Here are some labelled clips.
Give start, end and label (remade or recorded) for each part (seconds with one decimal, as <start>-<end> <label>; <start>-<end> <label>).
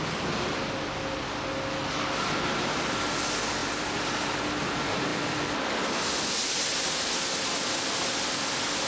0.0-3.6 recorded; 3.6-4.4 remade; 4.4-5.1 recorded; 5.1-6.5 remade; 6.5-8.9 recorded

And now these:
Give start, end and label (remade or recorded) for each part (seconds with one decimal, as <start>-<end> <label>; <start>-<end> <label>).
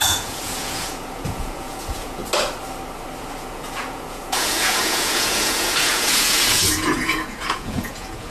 0.0-2.2 remade; 2.2-3.4 recorded; 3.4-8.3 remade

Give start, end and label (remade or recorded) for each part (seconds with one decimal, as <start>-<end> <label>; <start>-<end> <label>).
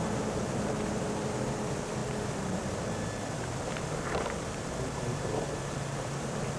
0.0-6.6 remade